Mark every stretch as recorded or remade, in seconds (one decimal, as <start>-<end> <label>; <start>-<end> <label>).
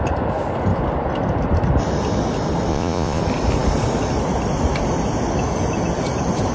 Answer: 0.0-2.7 recorded; 2.7-3.2 remade; 3.2-6.5 recorded